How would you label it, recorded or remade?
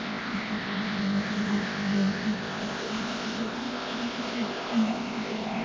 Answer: remade